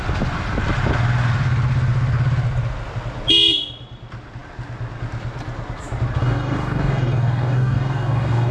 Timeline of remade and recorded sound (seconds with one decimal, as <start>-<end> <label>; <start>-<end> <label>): 0.0-6.2 recorded; 6.2-8.5 remade